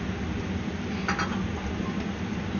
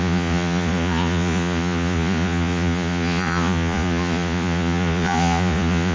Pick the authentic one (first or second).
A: first